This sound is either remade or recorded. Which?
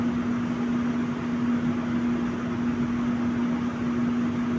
recorded